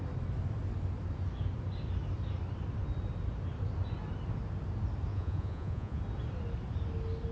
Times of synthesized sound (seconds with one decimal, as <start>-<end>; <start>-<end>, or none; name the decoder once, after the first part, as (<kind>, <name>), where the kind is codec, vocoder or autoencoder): 5.1-6.0 (vocoder, Vocos)